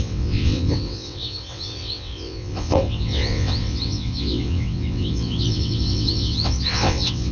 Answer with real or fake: fake